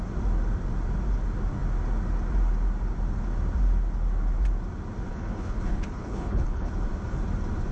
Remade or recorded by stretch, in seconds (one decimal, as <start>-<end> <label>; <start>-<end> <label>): 0.0-5.1 recorded; 5.1-6.7 remade; 6.7-7.7 recorded